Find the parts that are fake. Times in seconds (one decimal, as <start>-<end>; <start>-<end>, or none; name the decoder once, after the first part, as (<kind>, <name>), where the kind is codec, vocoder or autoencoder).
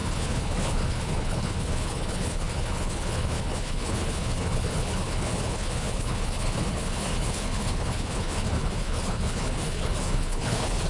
0.0-10.9 (codec, HILCodec)